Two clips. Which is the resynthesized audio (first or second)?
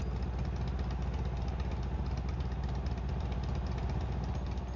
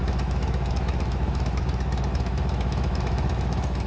second